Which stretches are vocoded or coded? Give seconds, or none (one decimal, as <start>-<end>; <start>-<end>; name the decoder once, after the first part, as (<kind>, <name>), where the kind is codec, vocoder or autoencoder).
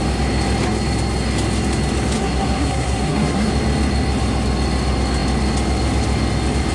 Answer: 2.2-3.5 (codec, SNAC)